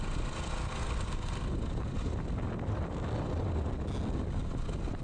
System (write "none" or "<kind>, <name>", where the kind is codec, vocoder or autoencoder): none